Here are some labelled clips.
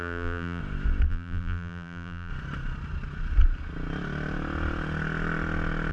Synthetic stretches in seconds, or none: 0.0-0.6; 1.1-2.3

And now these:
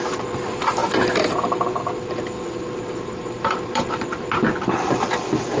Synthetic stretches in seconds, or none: 0.8-4.2

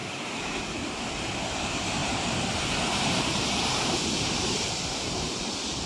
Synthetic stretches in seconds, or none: 0.0-0.6; 2.0-5.5

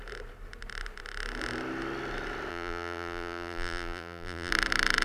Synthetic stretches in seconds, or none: 2.5-4.5